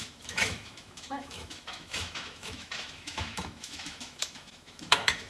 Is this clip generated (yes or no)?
yes